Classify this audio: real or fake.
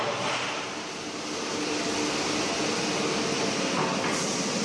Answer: real